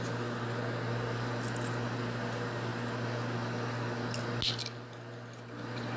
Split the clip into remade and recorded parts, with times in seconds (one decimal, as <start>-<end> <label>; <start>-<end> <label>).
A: 0.0-6.0 recorded